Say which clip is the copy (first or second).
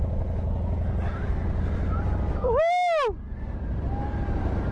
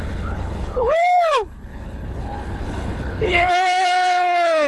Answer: second